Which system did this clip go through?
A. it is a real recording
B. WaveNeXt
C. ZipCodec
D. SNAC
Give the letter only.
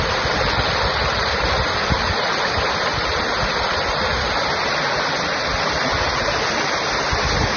A